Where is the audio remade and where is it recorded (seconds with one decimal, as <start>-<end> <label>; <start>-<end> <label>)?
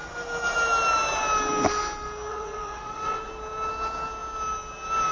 0.0-2.3 recorded; 2.3-3.3 remade; 3.3-5.1 recorded